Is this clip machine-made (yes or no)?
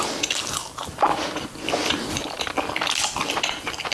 no